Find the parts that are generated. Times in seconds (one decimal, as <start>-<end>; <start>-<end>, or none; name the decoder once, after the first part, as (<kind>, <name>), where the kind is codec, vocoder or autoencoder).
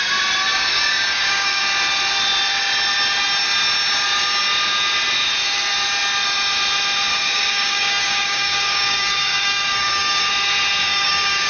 0.5-1.6 (codec, DAC); 7.1-10.2; 10.8-11.5